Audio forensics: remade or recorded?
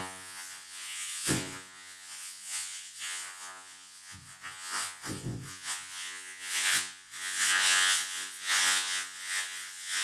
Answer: remade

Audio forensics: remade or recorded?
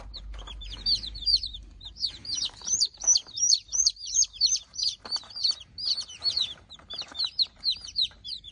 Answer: remade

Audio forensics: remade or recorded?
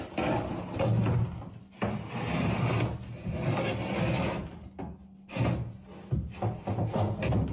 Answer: recorded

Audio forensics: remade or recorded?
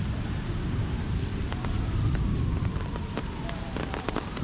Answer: remade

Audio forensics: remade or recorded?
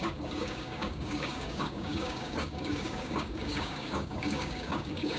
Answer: remade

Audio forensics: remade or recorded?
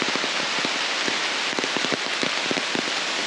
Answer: recorded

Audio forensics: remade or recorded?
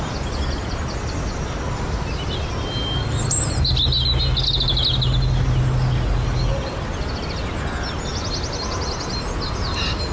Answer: recorded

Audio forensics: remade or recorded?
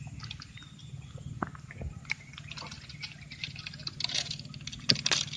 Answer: recorded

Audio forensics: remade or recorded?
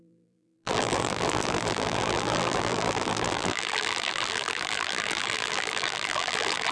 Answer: remade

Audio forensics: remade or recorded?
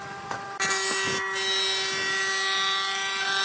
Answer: recorded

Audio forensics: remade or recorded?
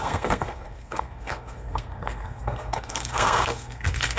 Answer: remade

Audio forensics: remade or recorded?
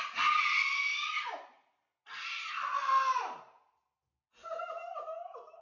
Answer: recorded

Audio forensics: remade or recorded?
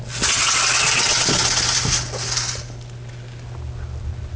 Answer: recorded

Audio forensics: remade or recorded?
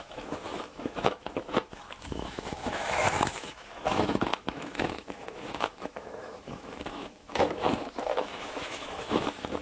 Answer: remade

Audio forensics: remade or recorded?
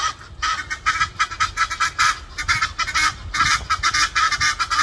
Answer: recorded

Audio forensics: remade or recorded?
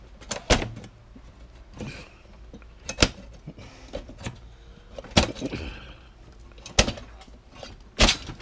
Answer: recorded